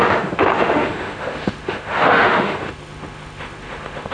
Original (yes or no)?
no